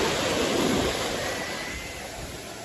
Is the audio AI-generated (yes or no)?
no